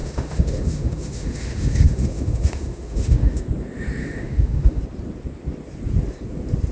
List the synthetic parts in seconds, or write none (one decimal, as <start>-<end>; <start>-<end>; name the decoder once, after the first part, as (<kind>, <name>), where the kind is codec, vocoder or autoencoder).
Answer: 0.0-3.4 (autoencoder, DAC-VAE); 4.0-4.8